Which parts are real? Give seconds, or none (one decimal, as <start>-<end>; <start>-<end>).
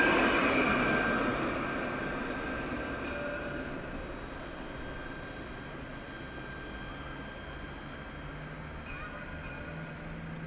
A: 0.0-10.5